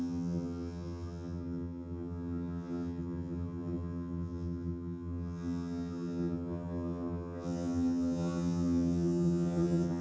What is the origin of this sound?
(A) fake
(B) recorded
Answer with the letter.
A